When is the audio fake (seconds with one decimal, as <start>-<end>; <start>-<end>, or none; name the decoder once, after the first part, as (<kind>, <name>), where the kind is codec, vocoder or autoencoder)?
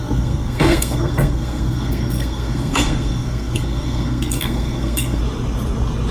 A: 0.0-5.2 (codec, SNAC)